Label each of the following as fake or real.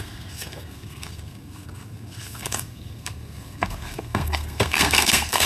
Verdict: fake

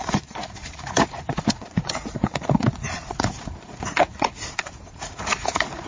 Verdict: fake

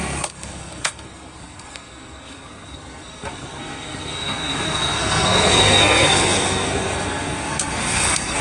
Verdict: fake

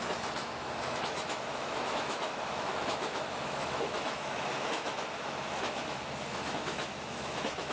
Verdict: fake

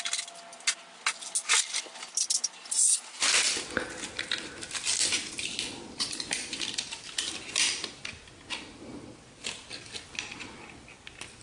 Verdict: real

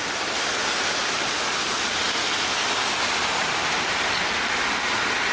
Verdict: real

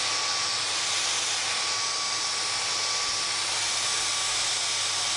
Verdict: real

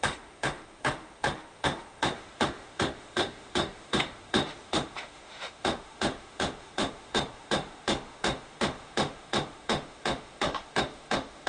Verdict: fake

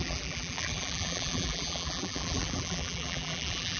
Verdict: fake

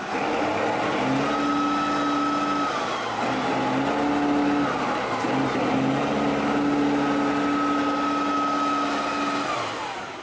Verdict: real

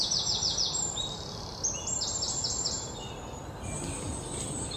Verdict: fake